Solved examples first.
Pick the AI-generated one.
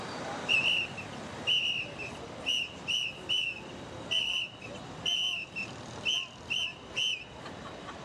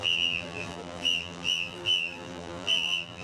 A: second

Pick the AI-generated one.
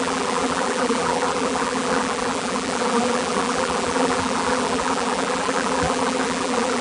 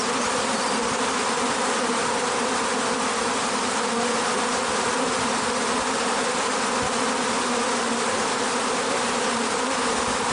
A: first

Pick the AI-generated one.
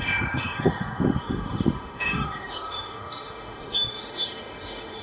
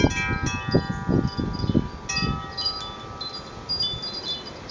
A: first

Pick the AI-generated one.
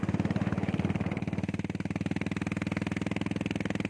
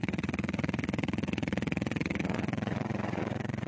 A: second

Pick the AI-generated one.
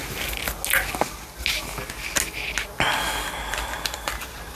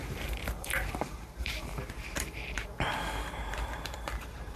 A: second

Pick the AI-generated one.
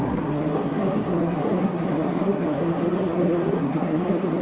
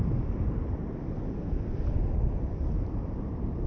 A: first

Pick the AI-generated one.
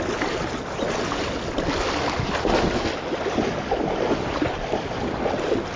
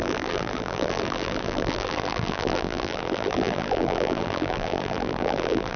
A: second